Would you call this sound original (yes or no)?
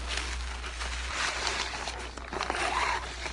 yes